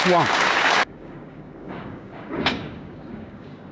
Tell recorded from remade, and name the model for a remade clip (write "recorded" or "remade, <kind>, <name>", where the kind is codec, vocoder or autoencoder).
remade, codec, DAC